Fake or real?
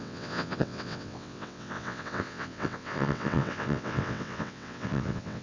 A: fake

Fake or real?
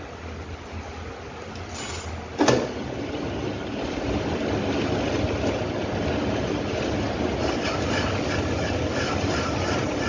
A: real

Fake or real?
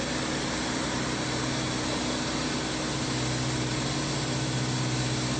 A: real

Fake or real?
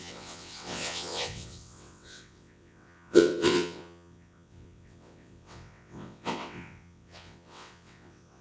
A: fake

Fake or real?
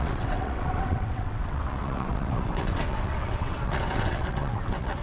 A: fake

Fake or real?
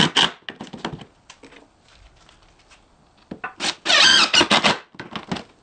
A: real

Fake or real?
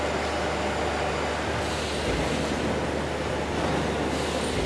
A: real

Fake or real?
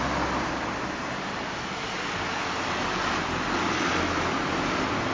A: real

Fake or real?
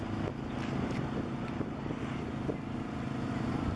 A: real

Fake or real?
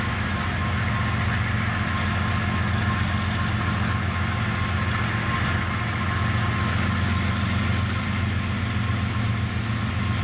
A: real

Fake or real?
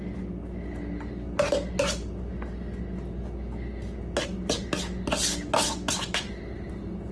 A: real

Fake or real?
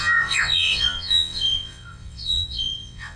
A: fake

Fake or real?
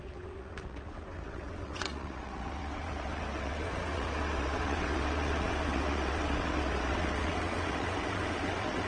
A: fake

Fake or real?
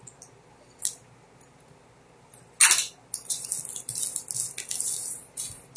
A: real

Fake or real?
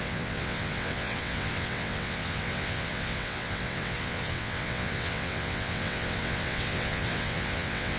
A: fake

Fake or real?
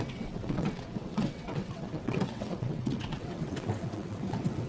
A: fake